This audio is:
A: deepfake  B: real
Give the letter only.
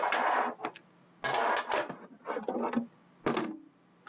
B